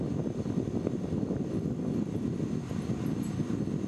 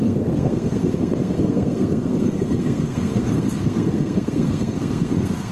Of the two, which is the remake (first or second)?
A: second